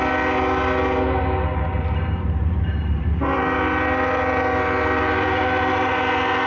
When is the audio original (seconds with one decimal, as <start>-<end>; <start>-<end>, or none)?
0.0-1.7; 3.3-6.5

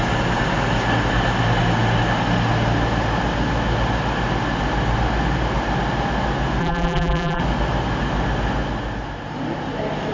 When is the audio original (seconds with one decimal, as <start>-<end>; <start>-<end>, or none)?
0.0-6.6; 7.4-10.1

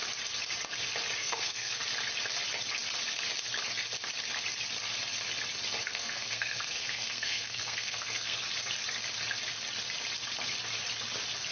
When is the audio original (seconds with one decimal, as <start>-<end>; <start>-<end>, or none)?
0.0-1.2; 1.8-5.9; 8.4-11.5

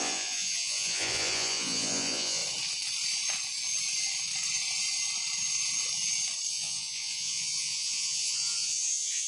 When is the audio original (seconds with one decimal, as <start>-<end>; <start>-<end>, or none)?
2.4-6.5

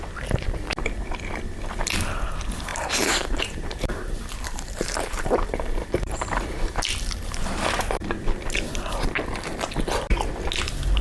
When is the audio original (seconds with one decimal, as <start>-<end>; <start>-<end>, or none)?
0.0-2.7; 7.8-11.0

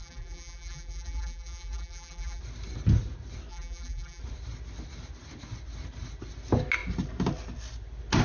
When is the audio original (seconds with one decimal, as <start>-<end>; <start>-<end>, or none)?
2.4-3.5; 4.2-8.2

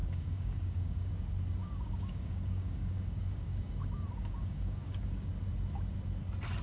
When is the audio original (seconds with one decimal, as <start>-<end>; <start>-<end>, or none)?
1.1-1.6; 5.3-6.6

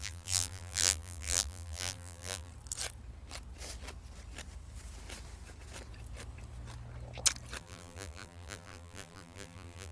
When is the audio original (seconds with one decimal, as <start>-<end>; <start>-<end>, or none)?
2.5-7.6